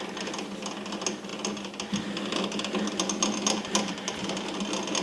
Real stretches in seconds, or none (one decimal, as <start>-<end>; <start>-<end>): 0.0-5.0